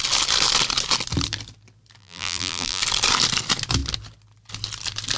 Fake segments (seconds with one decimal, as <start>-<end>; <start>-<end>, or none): 2.0-2.8